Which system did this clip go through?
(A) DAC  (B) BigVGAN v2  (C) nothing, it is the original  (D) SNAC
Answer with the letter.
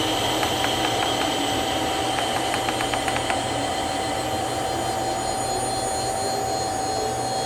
C